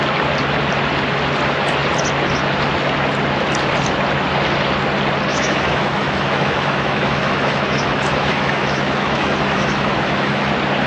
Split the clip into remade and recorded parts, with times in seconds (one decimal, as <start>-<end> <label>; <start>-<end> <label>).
0.0-5.3 recorded; 5.3-10.5 remade; 10.5-10.9 recorded

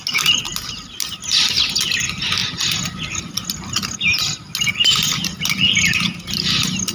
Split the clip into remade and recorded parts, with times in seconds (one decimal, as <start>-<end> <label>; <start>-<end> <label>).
0.0-6.9 recorded

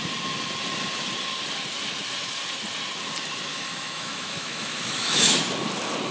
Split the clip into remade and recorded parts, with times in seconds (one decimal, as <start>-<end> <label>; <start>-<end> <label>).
0.0-3.5 recorded; 3.5-5.4 remade; 5.4-6.1 recorded